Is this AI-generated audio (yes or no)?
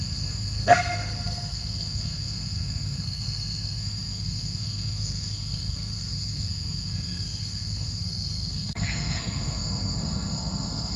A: yes